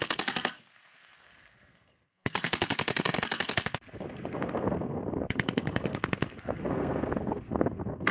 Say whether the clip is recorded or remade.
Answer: remade